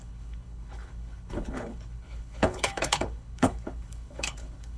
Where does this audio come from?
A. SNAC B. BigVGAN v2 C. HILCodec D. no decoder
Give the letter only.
C